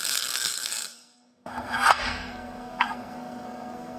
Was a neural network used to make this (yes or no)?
yes